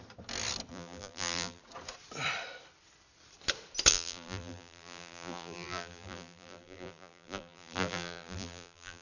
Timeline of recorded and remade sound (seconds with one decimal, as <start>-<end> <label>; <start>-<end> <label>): 0.0-0.7 recorded; 0.7-1.6 remade; 1.6-3.9 recorded; 3.9-9.0 remade